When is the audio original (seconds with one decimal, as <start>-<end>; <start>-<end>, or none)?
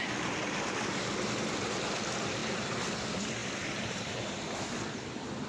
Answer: 0.0-5.5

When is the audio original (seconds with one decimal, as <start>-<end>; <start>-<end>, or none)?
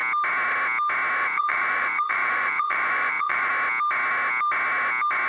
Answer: 0.0-1.2; 3.5-5.3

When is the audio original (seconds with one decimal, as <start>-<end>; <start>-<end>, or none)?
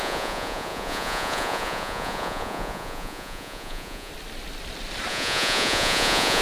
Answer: 4.1-5.1